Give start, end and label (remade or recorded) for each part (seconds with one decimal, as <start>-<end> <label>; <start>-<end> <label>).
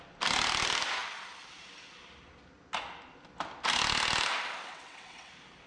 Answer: 0.0-4.7 recorded; 4.7-5.3 remade; 5.3-5.7 recorded